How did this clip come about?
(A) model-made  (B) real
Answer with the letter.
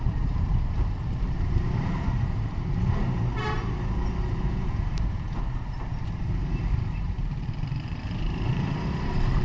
A